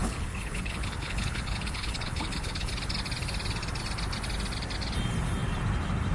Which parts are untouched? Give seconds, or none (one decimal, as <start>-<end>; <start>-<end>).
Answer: 2.7-6.1

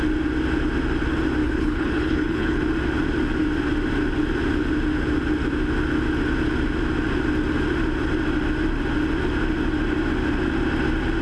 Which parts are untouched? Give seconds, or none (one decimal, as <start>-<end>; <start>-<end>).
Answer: 0.0-1.4; 2.6-11.2